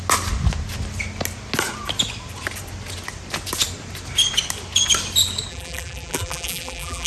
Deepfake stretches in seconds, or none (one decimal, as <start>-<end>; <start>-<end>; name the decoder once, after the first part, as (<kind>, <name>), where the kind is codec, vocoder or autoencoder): 5.5-7.1 (vocoder, BigVGAN v2)